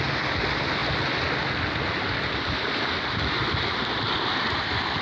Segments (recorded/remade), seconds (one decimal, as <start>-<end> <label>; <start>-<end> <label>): 0.0-5.0 recorded